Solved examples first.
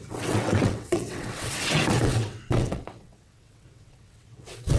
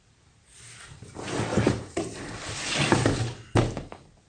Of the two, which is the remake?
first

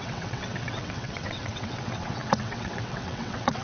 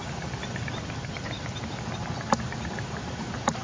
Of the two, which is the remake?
first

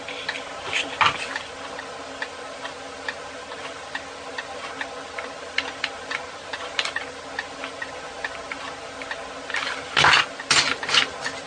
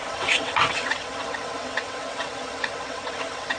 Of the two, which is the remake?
second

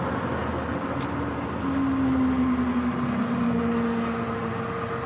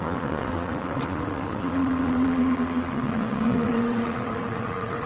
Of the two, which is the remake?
second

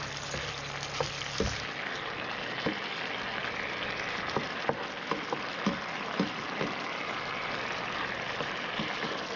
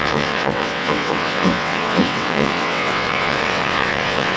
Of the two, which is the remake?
second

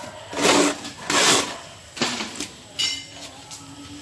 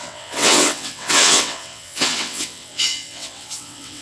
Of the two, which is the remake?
second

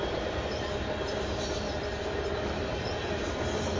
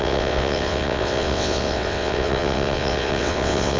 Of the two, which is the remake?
second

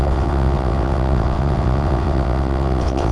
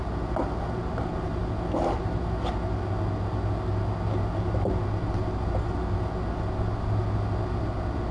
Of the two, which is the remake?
first